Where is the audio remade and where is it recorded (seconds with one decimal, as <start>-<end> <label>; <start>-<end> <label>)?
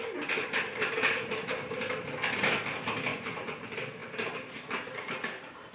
0.0-3.1 recorded; 3.1-3.6 remade; 3.6-5.7 recorded